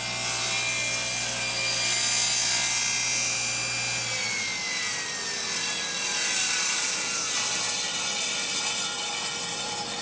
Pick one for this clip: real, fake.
real